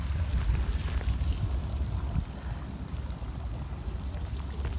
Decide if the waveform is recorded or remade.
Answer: recorded